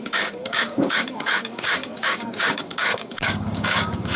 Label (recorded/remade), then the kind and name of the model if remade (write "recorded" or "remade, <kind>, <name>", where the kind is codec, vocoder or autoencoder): remade, codec, DAC